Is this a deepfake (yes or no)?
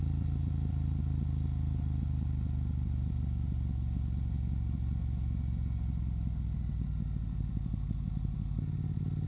no